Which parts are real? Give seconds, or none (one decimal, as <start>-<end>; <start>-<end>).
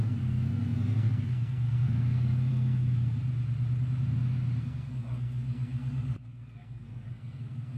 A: 3.2-4.6